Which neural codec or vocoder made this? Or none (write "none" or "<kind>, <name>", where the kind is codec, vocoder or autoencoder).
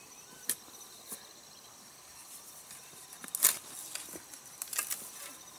none